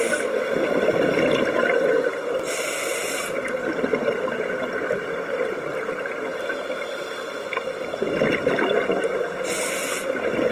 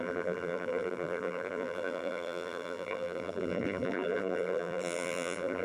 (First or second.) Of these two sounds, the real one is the first